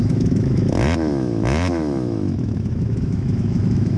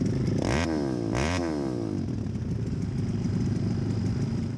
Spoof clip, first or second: first